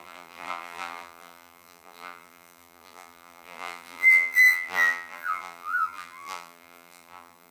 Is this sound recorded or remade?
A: remade